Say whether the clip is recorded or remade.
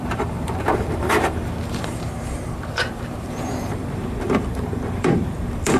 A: remade